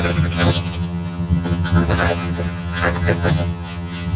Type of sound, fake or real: fake